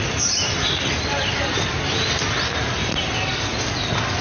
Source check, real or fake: real